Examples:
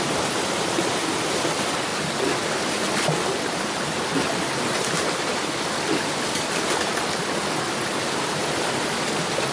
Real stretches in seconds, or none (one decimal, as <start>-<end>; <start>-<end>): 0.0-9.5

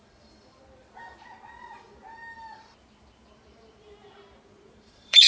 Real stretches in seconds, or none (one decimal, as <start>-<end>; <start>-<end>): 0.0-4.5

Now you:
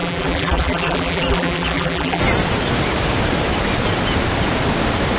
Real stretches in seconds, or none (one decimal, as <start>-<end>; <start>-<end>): 2.2-5.2

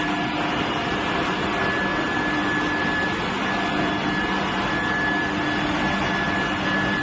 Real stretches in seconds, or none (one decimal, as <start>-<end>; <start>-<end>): 0.0-7.0

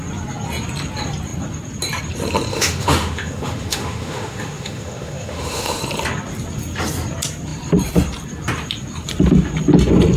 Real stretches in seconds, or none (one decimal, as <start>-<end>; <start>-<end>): 0.0-2.5; 5.8-10.2